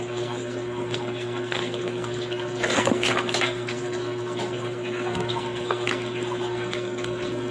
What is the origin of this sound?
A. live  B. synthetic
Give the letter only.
B